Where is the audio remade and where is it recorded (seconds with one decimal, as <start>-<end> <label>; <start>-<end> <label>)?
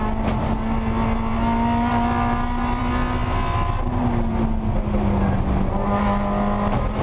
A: 0.0-7.0 recorded